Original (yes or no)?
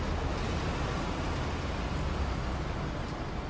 yes